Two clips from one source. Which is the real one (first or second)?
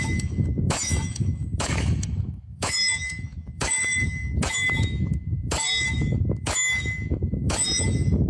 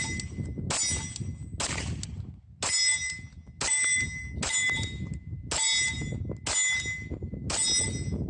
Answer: second